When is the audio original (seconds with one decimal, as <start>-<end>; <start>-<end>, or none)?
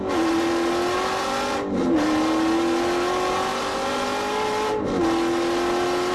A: 0.0-6.1